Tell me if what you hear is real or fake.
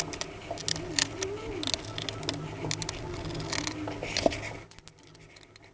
real